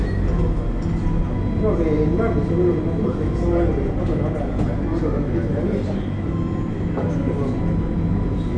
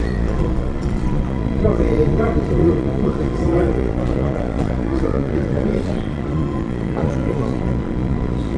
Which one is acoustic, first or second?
first